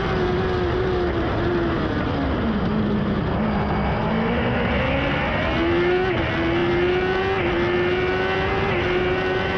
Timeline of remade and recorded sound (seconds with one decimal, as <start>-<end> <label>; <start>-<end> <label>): 0.0-9.6 recorded